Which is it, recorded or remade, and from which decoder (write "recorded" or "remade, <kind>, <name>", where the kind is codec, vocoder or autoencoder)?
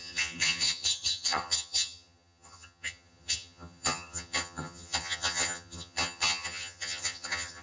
remade, vocoder, HiFi-GAN